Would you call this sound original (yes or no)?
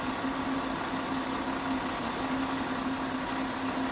yes